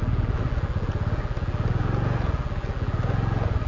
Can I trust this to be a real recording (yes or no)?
yes